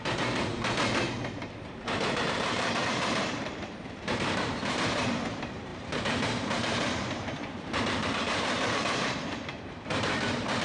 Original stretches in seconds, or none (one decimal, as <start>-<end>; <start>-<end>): 0.5-1.6